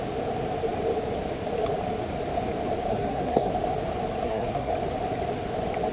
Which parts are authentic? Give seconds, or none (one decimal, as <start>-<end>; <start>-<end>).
0.0-2.9; 3.5-4.2; 4.7-5.9